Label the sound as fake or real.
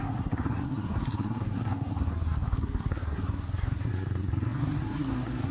fake